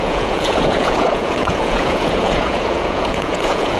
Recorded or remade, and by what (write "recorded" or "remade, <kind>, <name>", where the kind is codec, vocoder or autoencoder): remade, vocoder, Vocos